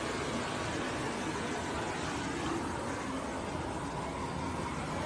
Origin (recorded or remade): recorded